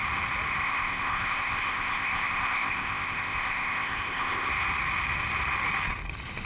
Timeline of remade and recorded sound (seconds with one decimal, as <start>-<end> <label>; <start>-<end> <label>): 0.0-0.6 recorded; 0.6-4.5 remade; 4.5-6.5 recorded